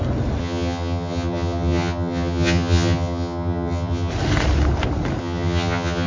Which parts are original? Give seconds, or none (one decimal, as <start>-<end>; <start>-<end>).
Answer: 0.0-0.4; 4.1-5.2